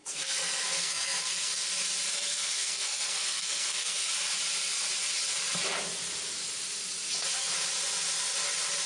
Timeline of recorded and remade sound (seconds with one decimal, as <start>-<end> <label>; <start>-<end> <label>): 0.0-1.7 remade; 1.7-2.1 recorded; 2.1-4.1 remade; 4.1-8.9 recorded